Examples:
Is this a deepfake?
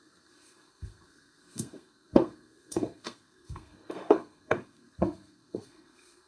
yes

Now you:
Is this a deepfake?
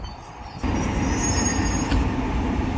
no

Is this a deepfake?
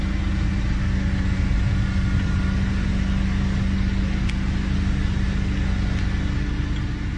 no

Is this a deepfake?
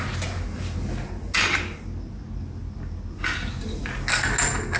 no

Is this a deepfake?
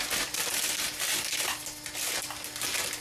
no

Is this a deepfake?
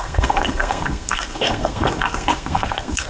yes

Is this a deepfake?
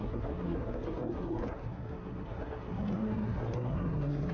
yes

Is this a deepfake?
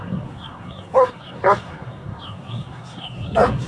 yes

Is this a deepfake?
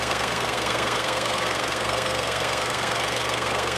yes